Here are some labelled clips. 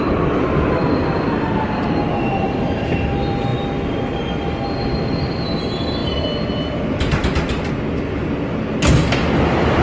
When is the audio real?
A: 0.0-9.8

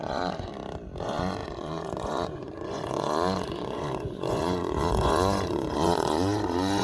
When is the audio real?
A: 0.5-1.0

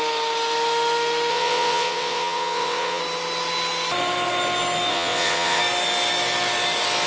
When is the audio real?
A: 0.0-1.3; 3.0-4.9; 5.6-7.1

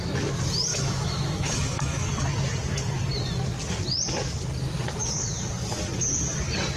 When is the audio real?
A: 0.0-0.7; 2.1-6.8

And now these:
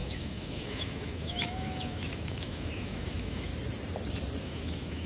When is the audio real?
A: 3.5-4.4